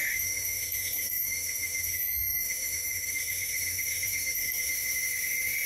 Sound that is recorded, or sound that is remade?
remade